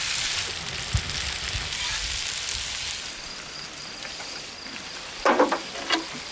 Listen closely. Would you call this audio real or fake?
real